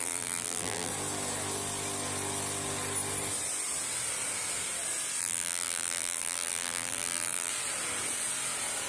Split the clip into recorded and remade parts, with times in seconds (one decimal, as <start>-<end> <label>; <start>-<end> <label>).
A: 0.0-0.9 remade; 0.9-5.2 recorded; 5.2-7.5 remade; 7.5-8.9 recorded